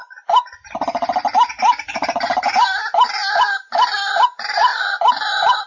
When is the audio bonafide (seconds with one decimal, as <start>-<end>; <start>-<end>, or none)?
0.0-5.7